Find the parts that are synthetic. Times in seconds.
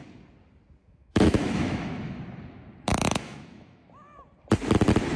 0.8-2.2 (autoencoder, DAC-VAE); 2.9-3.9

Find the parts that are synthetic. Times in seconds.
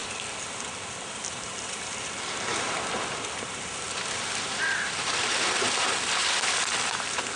2.5-6.9 (vocoder, BigVGAN v2)